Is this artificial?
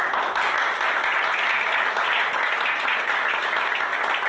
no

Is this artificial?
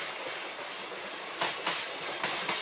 no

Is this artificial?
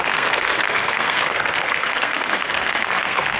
yes